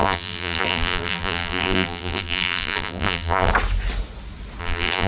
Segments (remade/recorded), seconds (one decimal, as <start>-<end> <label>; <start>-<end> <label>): 0.0-3.5 remade; 3.5-4.6 recorded; 4.6-5.1 remade